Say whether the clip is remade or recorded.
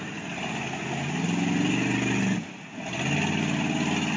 recorded